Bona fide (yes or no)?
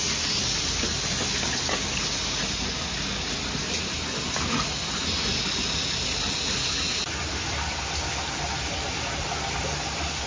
yes